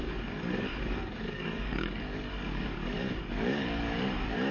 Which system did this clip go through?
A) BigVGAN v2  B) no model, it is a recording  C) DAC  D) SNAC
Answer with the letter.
C